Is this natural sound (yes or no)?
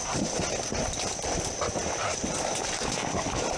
yes